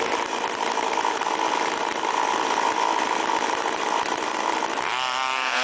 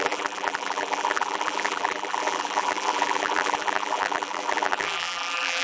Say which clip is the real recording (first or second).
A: first